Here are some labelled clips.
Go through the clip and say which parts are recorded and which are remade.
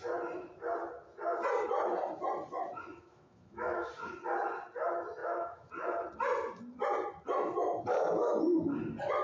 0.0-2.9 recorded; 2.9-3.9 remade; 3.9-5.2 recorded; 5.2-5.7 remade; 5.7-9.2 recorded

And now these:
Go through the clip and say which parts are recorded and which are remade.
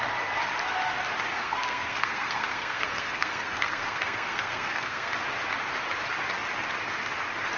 0.0-1.3 recorded; 1.3-5.1 remade; 5.1-7.6 recorded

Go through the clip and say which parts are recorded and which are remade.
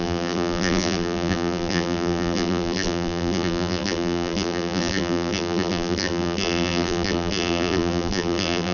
0.0-8.7 remade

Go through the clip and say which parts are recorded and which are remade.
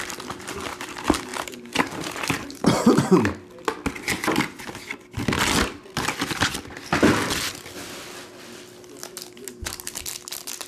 0.0-1.3 recorded; 1.3-3.1 remade; 3.1-10.7 recorded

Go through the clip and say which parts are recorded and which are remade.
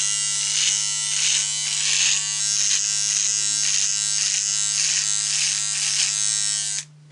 0.0-7.1 recorded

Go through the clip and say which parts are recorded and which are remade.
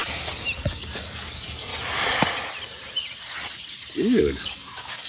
0.0-0.7 recorded; 0.7-1.7 remade; 1.7-4.2 recorded; 4.2-5.1 remade